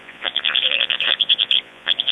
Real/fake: fake